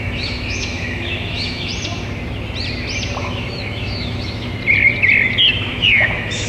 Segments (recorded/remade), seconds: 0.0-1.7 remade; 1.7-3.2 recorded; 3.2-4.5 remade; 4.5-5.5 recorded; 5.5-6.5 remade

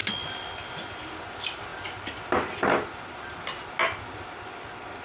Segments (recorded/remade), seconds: 0.0-5.0 recorded

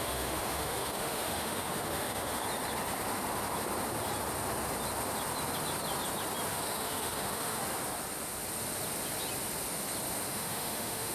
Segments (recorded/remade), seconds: 0.0-2.4 remade; 2.4-6.5 recorded; 6.5-7.6 remade; 7.6-10.3 recorded; 10.3-11.1 remade

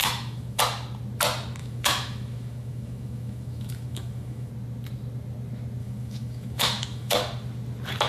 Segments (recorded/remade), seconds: 0.0-0.6 remade; 0.6-1.6 recorded; 1.6-4.5 remade; 4.5-5.8 recorded; 5.8-7.1 remade; 7.1-8.1 recorded

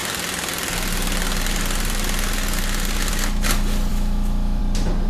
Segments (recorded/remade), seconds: 0.0-3.9 recorded; 3.9-4.6 remade; 4.6-5.1 recorded

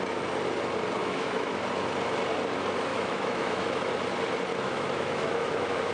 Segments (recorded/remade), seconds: 0.0-1.0 recorded; 1.0-1.5 remade; 1.5-2.9 recorded; 2.9-3.9 remade; 3.9-4.5 recorded; 4.5-5.9 remade

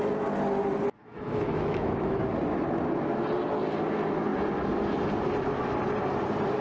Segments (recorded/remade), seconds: 0.0-1.0 recorded; 1.0-2.2 remade; 2.2-6.6 recorded